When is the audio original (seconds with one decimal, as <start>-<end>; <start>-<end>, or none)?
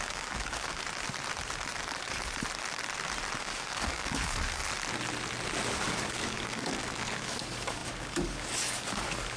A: 0.8-3.4; 4.6-5.7